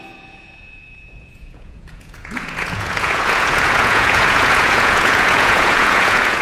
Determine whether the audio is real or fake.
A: fake